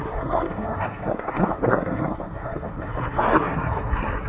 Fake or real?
fake